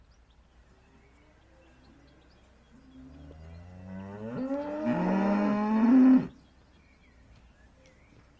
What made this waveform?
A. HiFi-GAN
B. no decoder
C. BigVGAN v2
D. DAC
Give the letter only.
B